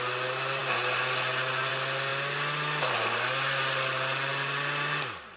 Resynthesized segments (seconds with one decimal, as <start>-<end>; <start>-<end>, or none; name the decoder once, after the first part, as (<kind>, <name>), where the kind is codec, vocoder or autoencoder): none